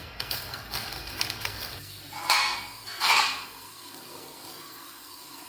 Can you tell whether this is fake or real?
fake